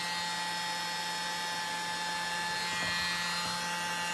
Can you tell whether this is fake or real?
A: real